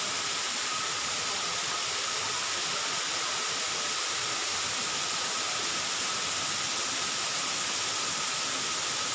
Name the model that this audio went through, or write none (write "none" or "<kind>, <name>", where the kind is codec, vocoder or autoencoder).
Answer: none